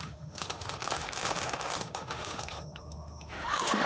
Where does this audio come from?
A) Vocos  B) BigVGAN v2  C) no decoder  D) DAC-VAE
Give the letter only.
D